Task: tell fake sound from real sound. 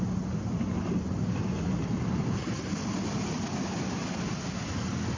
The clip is real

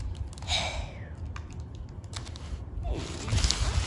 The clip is real